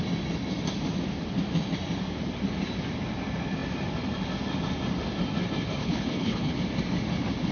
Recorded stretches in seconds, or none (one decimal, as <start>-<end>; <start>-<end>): 0.0-5.8; 6.5-7.5